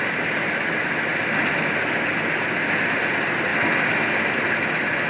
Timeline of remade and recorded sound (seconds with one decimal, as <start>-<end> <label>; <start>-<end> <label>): 0.0-5.1 recorded